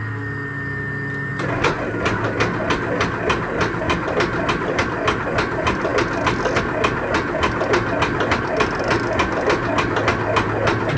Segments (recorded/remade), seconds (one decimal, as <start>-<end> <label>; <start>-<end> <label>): 0.0-11.0 recorded